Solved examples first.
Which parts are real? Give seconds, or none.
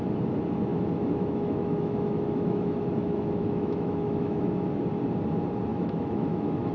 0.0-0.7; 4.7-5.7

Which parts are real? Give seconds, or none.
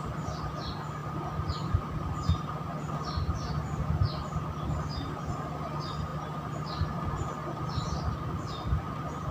0.0-9.3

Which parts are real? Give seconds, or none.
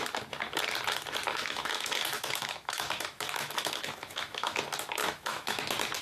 0.0-1.3; 4.6-5.0; 5.6-6.0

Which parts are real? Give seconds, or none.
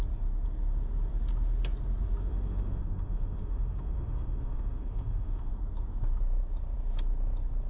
0.0-2.2; 5.5-7.7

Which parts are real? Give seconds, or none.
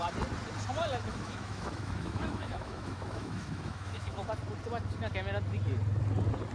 0.0-1.1; 4.3-6.5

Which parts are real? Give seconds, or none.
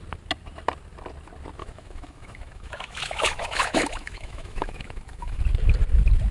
0.0-1.6; 5.4-6.3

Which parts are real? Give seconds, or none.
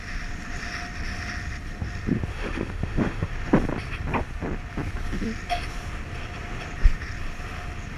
0.0-2.3; 3.3-8.0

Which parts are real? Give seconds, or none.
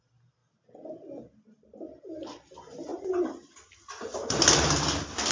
0.0-5.3